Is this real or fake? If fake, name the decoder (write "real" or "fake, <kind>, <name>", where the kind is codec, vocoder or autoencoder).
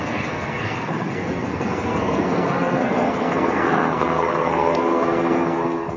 fake, codec, SNAC